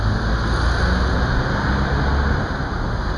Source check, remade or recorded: recorded